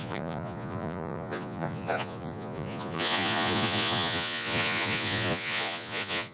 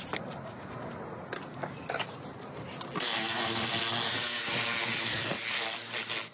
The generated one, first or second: first